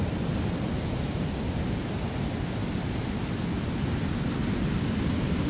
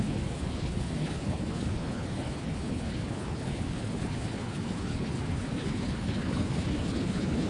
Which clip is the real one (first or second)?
first